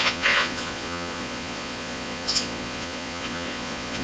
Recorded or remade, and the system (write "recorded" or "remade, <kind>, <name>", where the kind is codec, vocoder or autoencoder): remade, vocoder, Vocos